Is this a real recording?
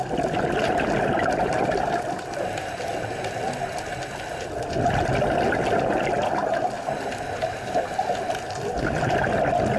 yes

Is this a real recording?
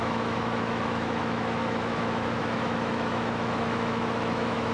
no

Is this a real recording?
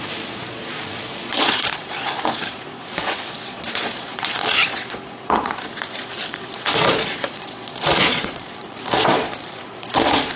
no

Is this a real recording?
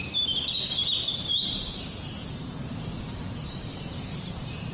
no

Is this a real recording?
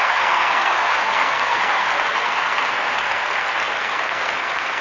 no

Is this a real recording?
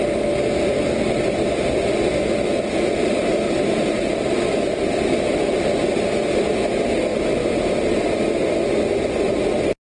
yes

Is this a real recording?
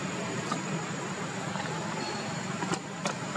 yes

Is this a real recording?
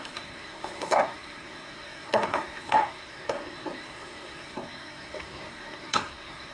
no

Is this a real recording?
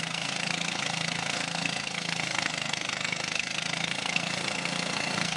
no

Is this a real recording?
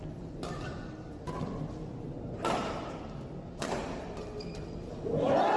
yes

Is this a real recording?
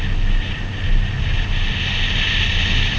yes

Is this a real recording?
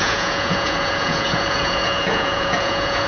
no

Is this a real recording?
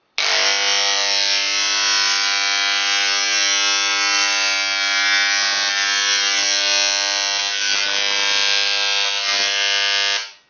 yes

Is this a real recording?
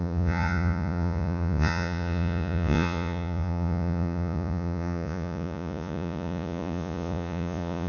no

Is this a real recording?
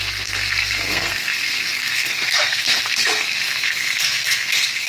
no